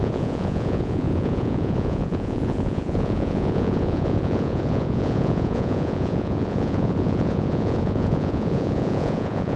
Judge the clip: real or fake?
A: fake